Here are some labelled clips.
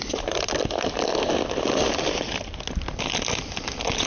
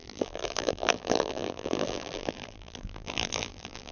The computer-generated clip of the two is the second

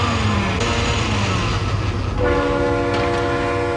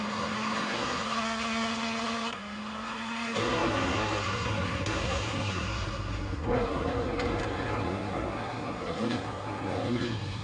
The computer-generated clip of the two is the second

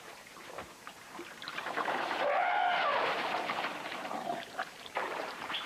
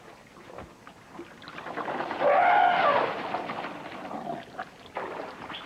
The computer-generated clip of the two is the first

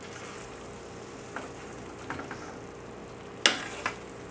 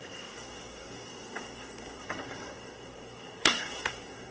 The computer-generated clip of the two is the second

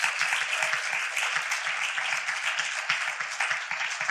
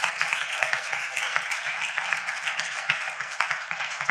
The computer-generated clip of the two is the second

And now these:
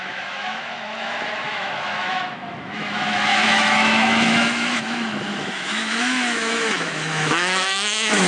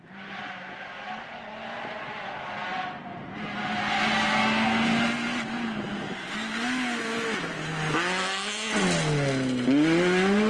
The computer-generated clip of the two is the first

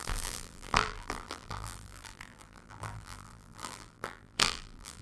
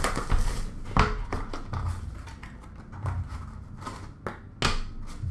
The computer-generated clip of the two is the first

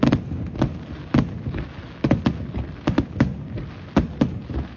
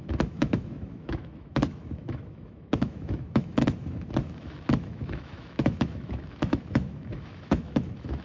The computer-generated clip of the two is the second